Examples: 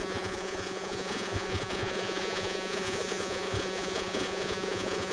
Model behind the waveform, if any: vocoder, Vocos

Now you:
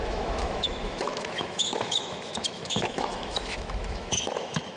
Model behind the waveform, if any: autoencoder, DAC-VAE